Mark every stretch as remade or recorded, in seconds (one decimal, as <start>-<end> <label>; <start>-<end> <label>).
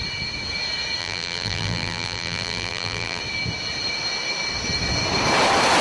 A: 0.0-1.0 recorded; 1.0-3.2 remade; 3.2-5.8 recorded